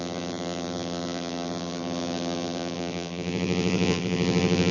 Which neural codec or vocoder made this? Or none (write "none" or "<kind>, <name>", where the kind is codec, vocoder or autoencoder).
vocoder, BigVGAN v2